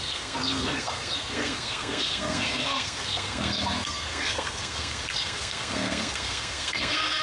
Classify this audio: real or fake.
fake